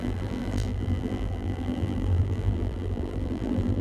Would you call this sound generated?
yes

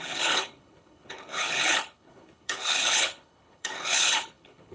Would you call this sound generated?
yes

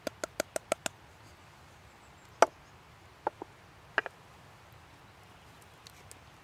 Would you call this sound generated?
no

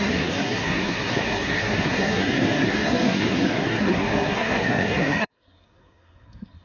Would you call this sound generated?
yes